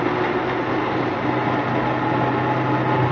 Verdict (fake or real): real